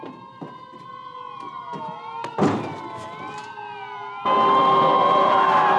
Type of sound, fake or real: real